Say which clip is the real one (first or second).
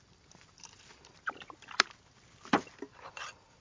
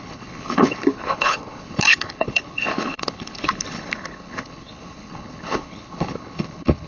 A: first